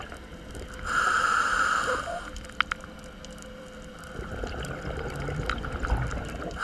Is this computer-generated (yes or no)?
no